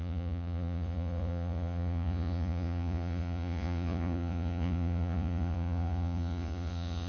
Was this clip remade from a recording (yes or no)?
yes